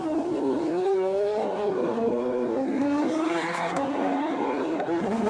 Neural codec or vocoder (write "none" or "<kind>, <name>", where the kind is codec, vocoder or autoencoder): codec, SNAC